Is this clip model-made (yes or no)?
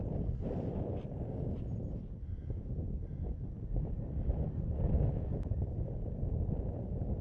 no